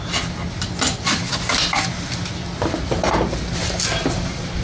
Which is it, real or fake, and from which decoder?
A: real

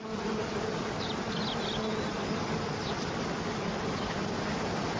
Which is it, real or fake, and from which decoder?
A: real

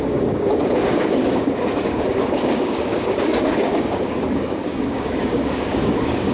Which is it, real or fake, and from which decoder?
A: fake, codec, DAC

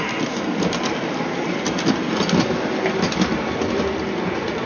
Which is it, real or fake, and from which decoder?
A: real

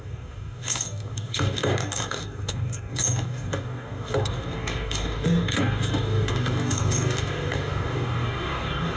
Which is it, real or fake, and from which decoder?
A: fake, codec, DAC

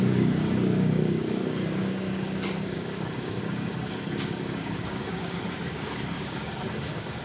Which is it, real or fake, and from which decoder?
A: fake, codec, DAC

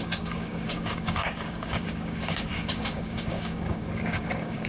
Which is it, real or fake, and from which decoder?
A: fake, codec, DAC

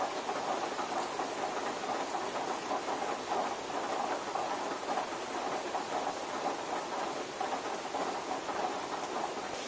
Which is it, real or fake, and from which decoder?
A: real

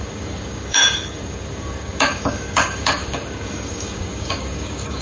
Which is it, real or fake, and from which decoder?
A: fake, codec, DAC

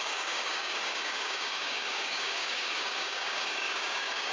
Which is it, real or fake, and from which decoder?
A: fake, codec, DAC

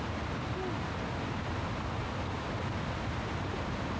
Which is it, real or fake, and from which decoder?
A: real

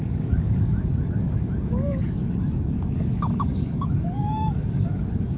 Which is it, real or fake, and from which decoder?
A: fake, codec, DAC